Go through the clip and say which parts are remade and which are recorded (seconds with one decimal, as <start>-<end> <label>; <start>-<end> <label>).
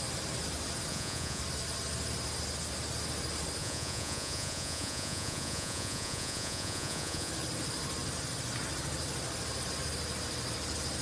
0.0-0.9 recorded; 0.9-1.4 remade; 1.4-3.6 recorded; 3.6-7.3 remade; 7.3-11.0 recorded